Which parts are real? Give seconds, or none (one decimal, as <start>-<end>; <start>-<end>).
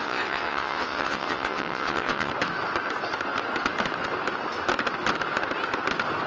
2.3-6.3